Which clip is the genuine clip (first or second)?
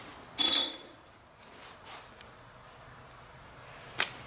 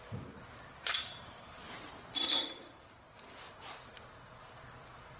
first